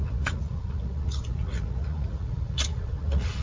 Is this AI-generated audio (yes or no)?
yes